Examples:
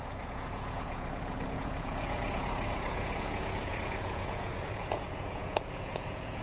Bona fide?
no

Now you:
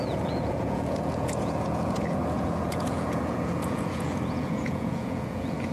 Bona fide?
no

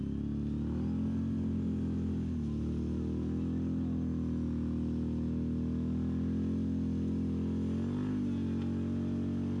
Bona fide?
yes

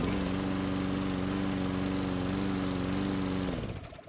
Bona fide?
yes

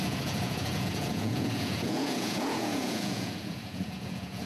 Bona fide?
no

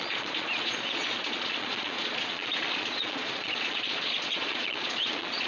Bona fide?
no